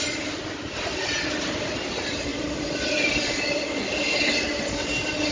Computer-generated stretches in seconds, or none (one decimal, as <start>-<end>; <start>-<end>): none